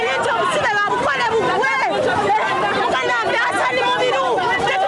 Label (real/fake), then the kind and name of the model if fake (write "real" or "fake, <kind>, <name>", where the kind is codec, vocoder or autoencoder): real